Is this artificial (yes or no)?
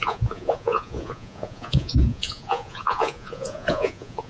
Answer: yes